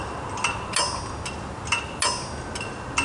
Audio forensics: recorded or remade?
recorded